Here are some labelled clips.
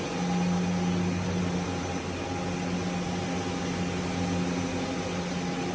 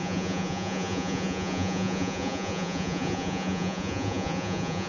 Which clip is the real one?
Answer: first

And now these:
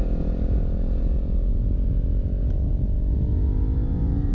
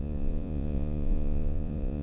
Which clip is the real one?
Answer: first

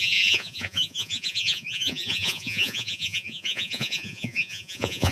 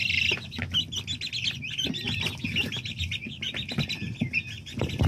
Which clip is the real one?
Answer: second